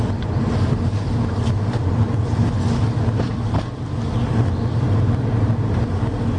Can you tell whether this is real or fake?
real